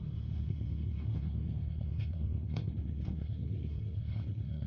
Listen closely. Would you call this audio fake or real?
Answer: fake